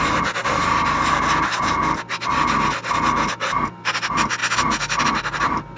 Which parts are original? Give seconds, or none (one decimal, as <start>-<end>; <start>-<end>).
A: 0.0-5.8